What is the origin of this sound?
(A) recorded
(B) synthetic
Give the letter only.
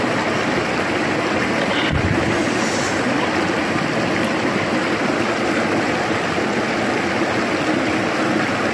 A